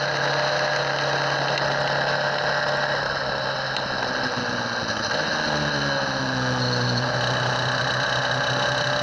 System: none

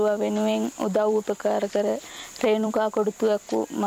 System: vocoder, BigVGAN v2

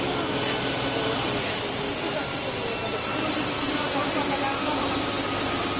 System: none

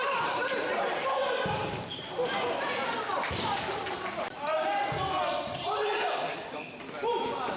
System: vocoder, BigVGAN v2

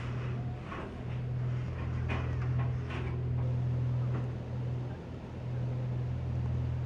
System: none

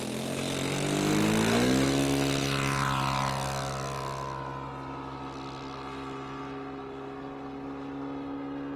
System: none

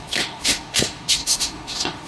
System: autoencoder, DAC-VAE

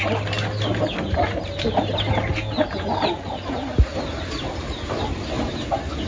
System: none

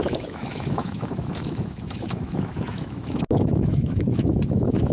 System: autoencoder, DAC-VAE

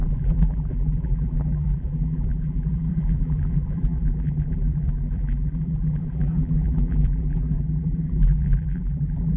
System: vocoder, BigVGAN v2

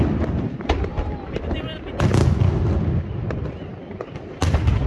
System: none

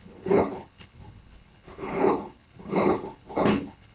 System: codec, HILCodec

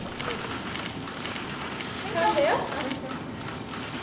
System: none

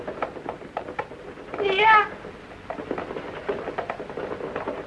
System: none